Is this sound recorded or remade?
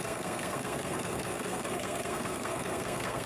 remade